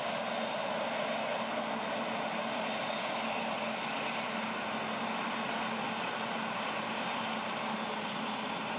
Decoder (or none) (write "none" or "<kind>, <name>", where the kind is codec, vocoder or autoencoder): none